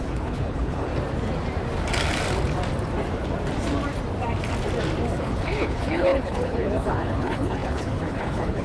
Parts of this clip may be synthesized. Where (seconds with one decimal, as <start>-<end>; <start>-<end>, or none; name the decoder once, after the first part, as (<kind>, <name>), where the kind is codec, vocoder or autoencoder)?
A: 0.0-0.9 (codec, HILCodec); 5.2-8.6